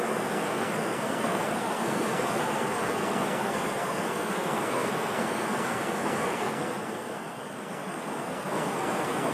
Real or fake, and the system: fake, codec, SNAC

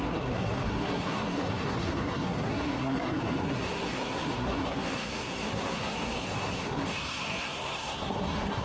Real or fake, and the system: fake, codec, SNAC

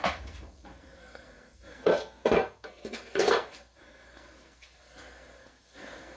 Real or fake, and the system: fake, codec, SNAC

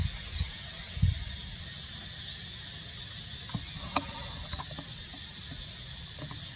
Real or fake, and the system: real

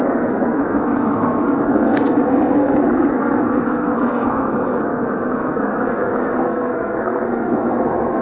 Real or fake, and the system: fake, codec, SNAC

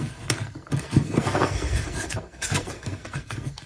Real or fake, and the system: fake, codec, SNAC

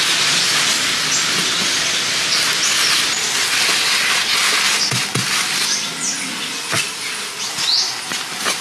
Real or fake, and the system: real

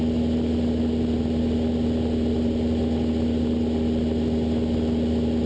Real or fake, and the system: real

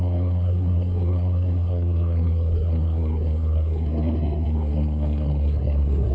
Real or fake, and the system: fake, codec, SNAC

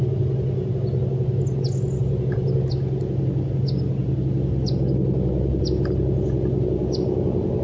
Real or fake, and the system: real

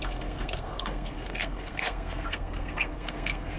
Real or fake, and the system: fake, codec, SNAC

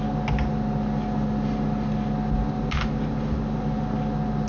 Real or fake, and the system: real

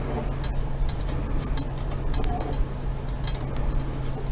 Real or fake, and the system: real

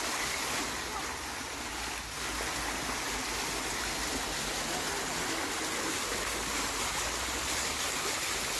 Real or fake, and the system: real